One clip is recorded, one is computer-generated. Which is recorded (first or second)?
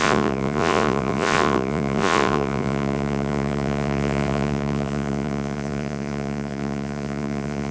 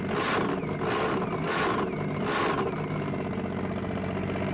second